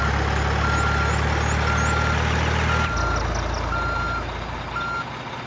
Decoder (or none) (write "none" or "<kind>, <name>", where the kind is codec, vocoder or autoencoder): none